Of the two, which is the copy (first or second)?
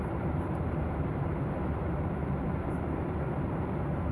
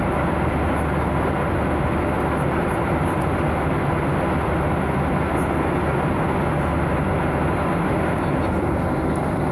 first